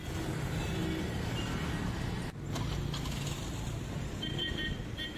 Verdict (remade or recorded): recorded